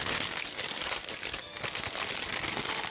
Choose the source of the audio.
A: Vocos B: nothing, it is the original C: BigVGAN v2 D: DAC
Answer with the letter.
B